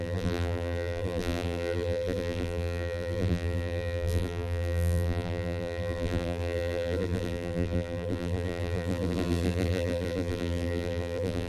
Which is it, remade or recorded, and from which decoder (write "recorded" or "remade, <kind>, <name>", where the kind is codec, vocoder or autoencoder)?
remade, vocoder, BigVGAN v2